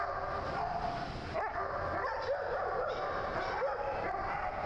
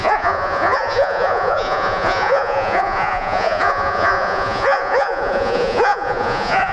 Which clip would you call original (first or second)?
first